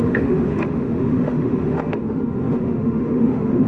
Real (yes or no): no